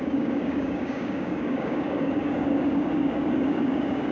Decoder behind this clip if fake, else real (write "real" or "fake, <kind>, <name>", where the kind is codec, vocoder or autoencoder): fake, codec, DAC